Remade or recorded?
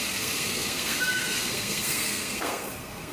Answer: remade